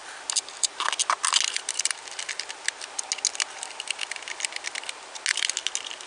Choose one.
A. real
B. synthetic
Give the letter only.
A